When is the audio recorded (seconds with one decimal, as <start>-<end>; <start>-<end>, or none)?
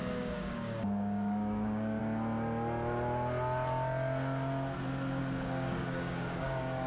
2.0-5.2